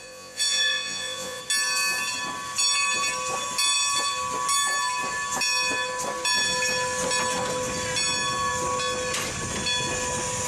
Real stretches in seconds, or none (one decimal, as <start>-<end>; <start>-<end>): 1.4-10.5